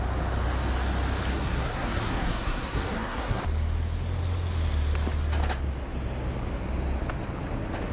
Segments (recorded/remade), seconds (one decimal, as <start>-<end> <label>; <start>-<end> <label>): 0.0-1.3 recorded; 1.3-3.4 remade; 3.4-7.9 recorded